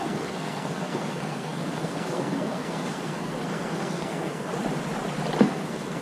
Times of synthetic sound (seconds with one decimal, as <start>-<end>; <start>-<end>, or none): 0.0-4.5; 5.4-6.0